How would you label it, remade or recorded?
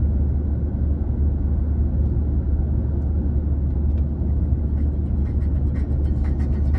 recorded